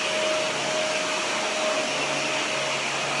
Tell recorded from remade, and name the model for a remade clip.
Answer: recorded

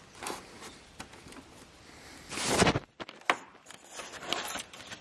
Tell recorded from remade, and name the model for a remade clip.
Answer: recorded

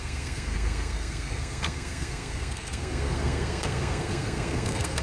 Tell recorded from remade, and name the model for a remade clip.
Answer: remade, codec, SNAC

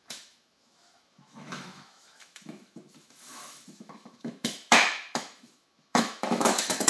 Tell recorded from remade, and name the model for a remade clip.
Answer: remade, autoencoder, DAC-VAE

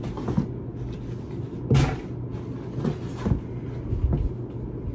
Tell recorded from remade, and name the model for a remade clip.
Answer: recorded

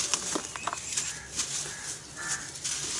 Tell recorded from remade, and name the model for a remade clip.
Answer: recorded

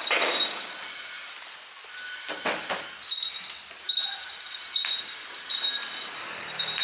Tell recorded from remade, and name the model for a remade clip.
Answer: recorded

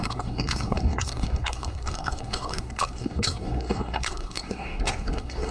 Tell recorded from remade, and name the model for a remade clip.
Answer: remade, codec, SNAC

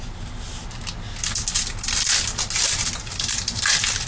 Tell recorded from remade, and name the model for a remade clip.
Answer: recorded